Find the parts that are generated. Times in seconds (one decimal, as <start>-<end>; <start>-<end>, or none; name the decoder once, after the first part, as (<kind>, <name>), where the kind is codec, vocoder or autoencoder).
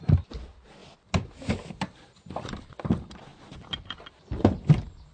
none